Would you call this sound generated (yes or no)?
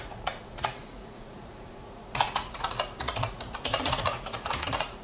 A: yes